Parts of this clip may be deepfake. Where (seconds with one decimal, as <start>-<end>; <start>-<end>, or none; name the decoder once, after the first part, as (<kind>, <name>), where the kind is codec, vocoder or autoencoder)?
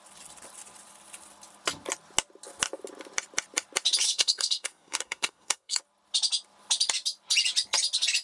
4.0-5.8 (codec, SNAC)